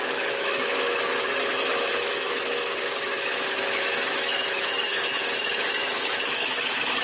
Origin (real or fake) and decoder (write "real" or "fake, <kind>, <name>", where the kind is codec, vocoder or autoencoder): fake, autoencoder, DAC-VAE